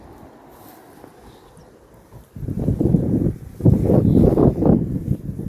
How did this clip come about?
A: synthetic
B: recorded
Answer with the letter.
B